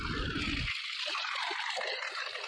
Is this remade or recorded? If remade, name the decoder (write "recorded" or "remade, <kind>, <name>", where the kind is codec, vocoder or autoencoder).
recorded